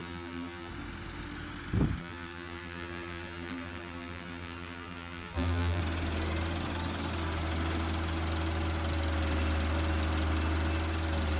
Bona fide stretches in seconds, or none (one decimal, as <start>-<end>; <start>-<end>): 0.7-2.0; 5.8-11.4